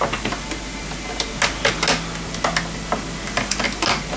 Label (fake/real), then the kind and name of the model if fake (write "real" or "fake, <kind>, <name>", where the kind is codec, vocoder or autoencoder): real